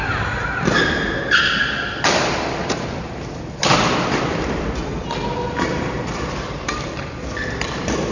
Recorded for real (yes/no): no